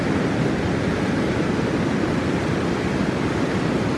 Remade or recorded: recorded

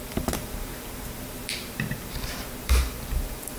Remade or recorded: remade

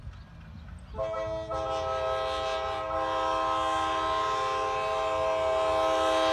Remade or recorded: recorded